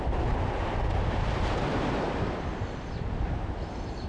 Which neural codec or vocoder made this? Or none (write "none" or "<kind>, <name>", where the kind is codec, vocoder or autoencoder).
none